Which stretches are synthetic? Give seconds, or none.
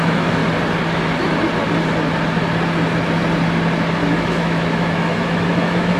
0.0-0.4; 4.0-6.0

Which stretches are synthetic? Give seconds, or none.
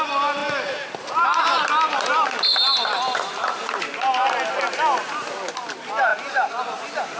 none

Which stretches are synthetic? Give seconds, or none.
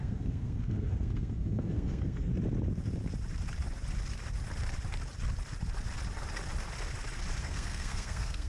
0.0-2.3; 7.4-8.5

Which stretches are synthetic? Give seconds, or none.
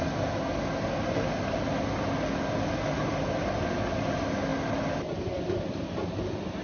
none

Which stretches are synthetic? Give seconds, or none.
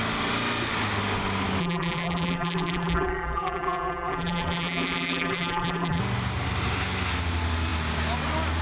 1.6-6.0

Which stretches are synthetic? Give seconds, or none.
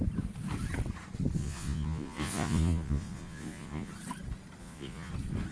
1.4-3.9; 4.6-5.1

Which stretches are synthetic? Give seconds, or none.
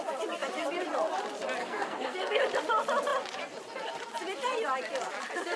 1.6-2.4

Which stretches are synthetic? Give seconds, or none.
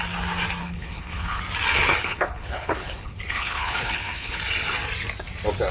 0.6-1.4; 2.0-4.4